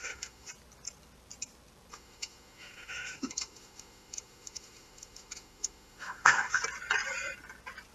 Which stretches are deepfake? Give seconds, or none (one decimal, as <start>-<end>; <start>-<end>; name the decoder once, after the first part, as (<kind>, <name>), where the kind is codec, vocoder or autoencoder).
0.0-0.5 (autoencoder, DAC-VAE); 1.9-6.6